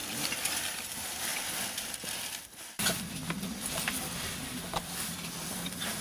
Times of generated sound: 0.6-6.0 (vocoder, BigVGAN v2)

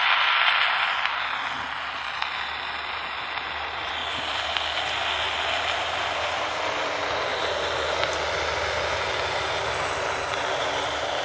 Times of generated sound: 0.0-2.2 (vocoder, BigVGAN v2); 2.8-4.0; 5.2-7.3; 9.7-11.2

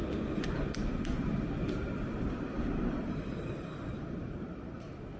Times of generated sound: 0.0-5.2 (vocoder, BigVGAN v2)

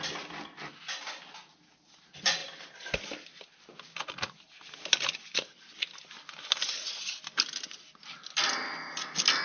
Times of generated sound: 2.4-3.2 (vocoder, BigVGAN v2)